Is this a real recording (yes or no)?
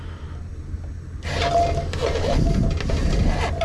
yes